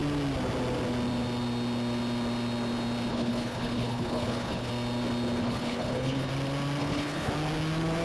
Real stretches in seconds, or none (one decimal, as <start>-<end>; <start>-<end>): 0.0-3.1; 4.7-5.4; 6.3-6.8; 7.3-8.0